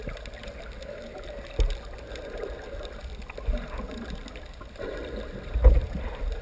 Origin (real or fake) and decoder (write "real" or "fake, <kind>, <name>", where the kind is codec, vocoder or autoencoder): real